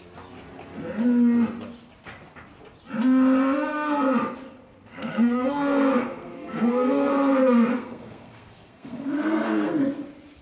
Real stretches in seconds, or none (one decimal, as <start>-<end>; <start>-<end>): 0.0-4.9; 7.1-7.7; 9.8-10.4